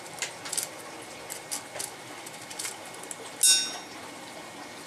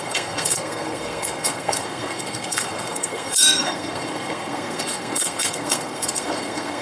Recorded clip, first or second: first